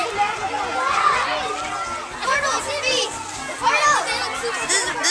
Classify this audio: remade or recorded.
recorded